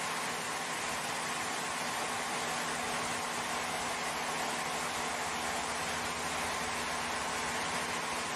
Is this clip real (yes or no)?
yes